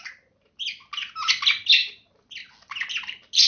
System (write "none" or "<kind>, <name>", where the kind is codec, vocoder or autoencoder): none